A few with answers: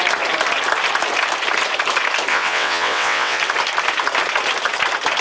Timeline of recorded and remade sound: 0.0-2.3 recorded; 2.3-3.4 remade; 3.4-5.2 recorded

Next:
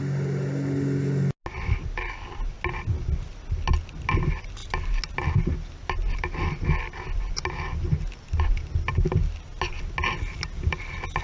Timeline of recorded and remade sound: 0.0-11.2 recorded

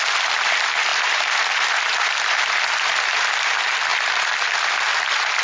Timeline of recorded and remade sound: 0.0-5.4 recorded